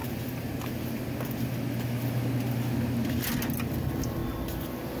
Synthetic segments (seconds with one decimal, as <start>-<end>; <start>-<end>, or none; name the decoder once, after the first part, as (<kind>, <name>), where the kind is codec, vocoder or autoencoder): 0.0-0.7 (vocoder, BigVGAN v2)